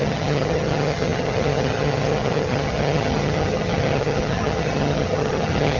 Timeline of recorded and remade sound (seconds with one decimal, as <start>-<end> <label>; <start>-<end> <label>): 0.0-5.8 remade